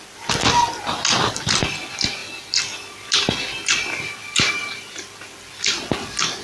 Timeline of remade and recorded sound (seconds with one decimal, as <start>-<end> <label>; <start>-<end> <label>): 0.0-6.4 recorded